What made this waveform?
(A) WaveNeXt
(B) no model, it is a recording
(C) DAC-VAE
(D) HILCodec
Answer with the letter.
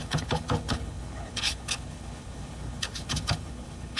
D